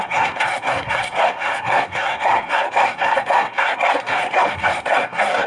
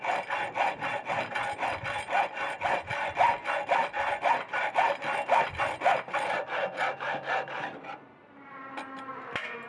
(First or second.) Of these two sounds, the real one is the second